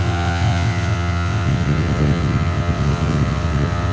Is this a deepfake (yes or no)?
yes